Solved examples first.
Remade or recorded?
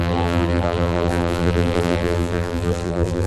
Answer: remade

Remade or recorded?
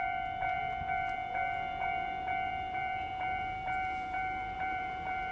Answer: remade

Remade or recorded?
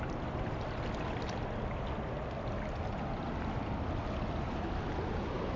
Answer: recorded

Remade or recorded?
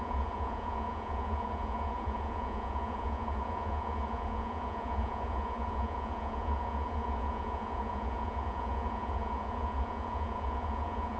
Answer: remade